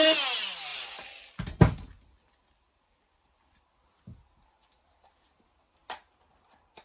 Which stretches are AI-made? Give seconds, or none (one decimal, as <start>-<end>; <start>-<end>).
0.7-3.6